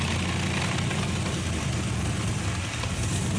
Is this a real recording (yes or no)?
yes